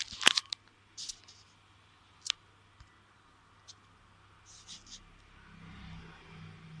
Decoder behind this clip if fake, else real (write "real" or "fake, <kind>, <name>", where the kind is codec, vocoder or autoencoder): real